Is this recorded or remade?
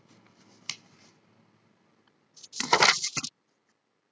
recorded